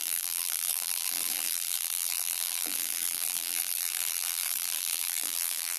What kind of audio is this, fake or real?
fake